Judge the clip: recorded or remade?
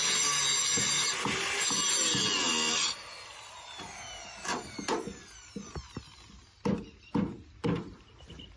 recorded